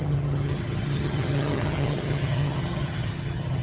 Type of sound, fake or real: fake